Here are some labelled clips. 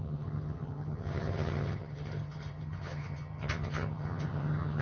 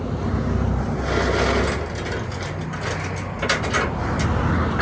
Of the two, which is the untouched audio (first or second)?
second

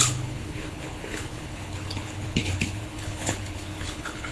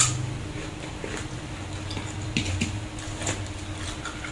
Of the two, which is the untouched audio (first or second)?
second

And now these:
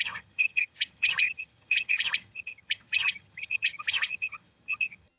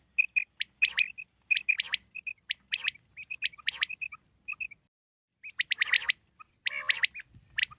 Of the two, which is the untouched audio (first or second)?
second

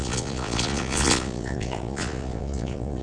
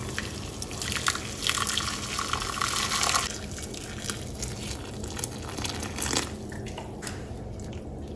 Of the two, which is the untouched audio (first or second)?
second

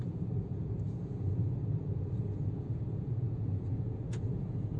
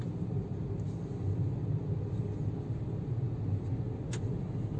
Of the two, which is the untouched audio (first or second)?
second